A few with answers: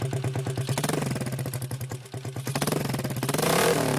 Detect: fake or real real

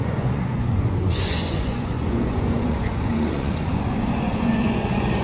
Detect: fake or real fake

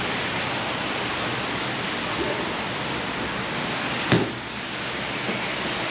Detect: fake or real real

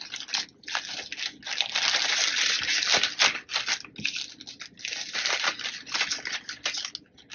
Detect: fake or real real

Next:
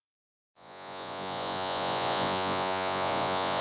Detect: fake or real fake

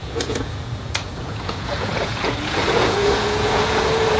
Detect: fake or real fake